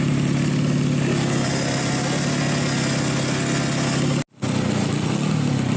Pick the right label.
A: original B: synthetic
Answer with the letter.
A